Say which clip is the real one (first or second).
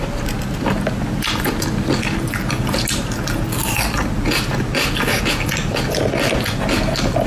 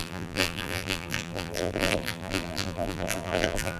first